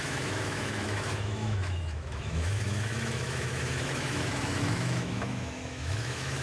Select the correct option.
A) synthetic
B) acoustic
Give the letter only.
A